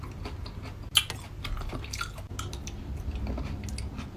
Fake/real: real